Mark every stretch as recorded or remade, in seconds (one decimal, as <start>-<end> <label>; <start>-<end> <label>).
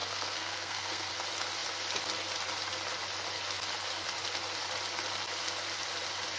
0.0-1.1 remade; 1.1-6.4 recorded